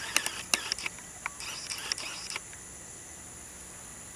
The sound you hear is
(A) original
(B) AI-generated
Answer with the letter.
A